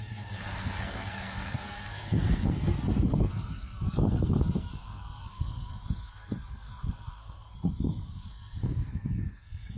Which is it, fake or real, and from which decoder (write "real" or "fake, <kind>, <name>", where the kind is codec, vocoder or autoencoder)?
fake, codec, SNAC